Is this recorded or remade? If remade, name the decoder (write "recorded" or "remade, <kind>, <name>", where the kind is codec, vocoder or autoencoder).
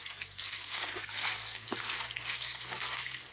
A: remade, codec, SNAC